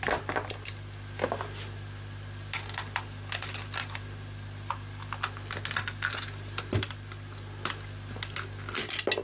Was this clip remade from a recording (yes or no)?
no